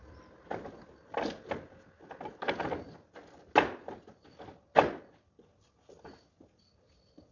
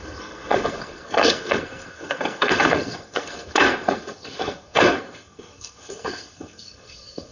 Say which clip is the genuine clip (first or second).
first